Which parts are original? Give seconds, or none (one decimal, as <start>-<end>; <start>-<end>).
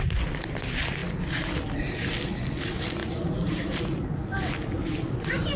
0.0-3.0; 3.8-5.6